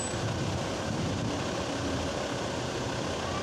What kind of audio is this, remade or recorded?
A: recorded